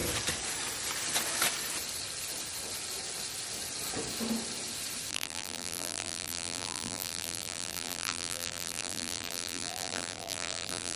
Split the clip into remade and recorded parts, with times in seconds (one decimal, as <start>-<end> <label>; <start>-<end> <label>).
0.0-5.1 recorded; 5.1-11.0 remade